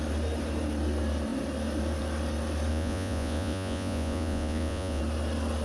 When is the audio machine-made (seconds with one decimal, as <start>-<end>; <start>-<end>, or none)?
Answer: 2.7-5.0